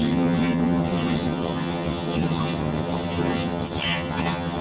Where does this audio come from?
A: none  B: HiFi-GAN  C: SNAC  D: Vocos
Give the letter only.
B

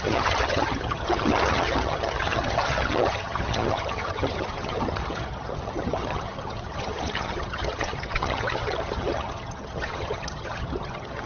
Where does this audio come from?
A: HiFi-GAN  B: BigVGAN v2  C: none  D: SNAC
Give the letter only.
A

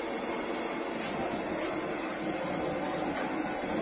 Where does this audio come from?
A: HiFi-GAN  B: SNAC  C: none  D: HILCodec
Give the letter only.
C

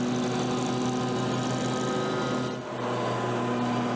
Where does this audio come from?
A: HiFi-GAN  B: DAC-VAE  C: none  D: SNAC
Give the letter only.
C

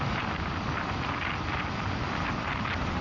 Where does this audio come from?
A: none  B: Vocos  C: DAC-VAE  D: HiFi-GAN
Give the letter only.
A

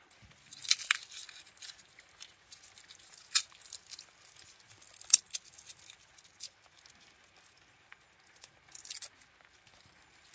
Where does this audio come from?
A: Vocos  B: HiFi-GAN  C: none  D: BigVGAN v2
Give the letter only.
C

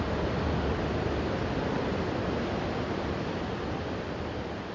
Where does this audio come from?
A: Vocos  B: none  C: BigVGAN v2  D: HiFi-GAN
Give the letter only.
B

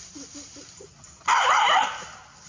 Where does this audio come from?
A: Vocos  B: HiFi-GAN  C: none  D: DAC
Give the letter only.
C